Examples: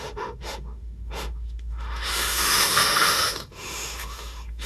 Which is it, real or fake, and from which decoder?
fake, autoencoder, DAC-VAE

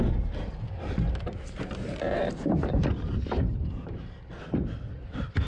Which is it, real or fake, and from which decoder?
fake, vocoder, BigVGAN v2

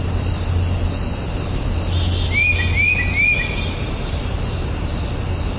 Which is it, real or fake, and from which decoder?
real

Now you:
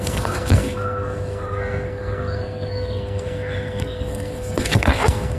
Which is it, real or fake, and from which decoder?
fake, codec, SNAC